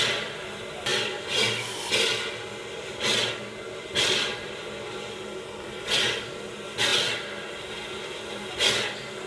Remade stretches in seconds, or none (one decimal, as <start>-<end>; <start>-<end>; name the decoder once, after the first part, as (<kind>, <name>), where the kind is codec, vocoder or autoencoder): none